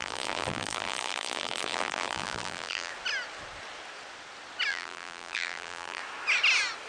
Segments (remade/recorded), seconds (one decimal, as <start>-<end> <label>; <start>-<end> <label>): 0.0-2.9 remade; 2.9-4.7 recorded; 4.7-6.0 remade; 6.0-6.9 recorded